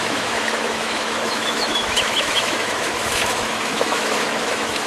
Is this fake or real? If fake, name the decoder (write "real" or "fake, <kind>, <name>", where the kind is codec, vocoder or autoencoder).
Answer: fake, autoencoder, DAC-VAE